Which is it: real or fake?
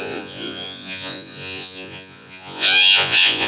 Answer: fake